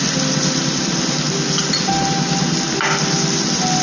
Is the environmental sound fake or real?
real